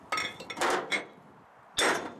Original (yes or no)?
yes